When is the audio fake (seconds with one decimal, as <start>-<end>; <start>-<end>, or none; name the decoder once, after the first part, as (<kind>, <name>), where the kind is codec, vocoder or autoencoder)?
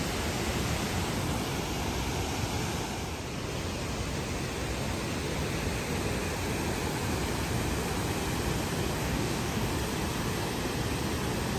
9.0-9.7 (codec, DAC)